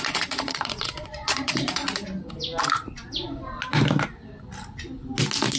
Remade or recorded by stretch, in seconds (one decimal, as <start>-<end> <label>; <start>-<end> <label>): 0.0-1.8 remade; 1.8-5.6 recorded